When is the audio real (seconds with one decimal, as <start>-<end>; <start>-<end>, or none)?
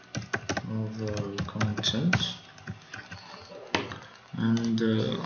0.0-5.3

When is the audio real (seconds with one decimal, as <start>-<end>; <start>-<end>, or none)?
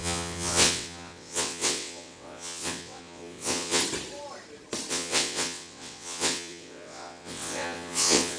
3.8-4.9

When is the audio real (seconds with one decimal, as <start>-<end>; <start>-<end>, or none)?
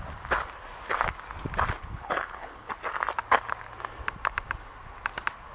0.0-1.8; 2.7-5.5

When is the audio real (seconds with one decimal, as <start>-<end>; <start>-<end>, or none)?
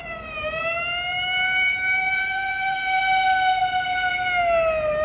3.0-3.6; 4.1-5.0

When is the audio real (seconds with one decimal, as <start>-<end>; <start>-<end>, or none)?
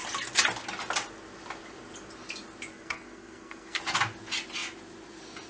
0.0-2.7; 3.8-5.5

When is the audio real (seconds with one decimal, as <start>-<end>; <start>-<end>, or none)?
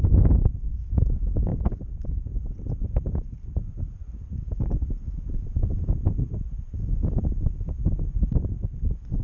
0.0-9.2